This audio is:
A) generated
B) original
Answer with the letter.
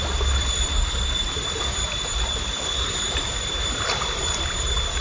A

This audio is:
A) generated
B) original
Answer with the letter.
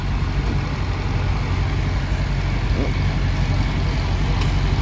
B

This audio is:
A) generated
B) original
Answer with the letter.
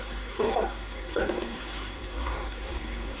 A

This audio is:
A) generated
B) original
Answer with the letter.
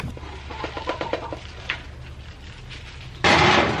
B